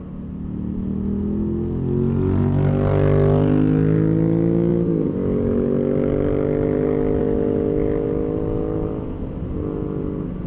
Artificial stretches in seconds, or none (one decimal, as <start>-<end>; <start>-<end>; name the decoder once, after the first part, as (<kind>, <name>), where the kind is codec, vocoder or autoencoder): none